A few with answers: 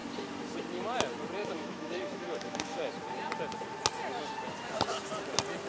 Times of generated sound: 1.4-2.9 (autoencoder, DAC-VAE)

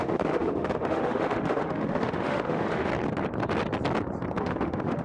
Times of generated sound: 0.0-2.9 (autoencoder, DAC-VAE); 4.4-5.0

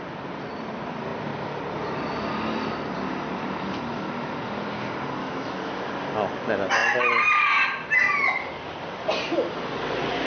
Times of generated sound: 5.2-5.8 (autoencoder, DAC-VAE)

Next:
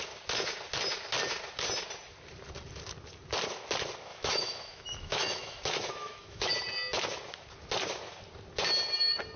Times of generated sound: 4.1-6.5 (autoencoder, DAC-VAE)

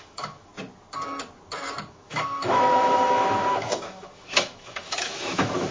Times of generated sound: 0.0-0.5 (autoencoder, DAC-VAE); 1.9-5.7

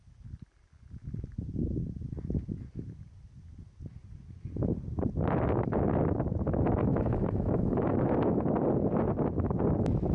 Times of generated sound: 6.9-8.5 (autoencoder, DAC-VAE)